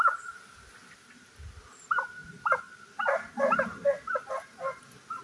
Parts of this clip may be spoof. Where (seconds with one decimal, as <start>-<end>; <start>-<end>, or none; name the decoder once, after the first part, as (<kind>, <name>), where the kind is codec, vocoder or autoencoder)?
none